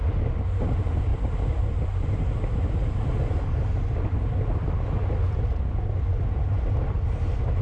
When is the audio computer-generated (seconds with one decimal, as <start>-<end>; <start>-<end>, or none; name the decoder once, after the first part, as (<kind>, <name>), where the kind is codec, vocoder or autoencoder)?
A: none